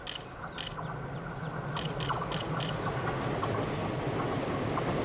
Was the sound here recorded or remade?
recorded